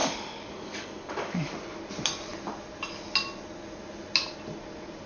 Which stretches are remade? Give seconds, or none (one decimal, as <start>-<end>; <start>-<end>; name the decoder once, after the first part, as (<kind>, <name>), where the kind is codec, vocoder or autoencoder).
0.0-1.5 (codec, DAC)